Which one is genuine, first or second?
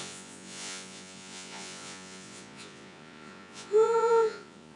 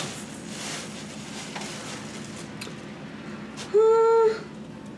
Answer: second